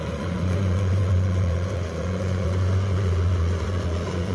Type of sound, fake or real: fake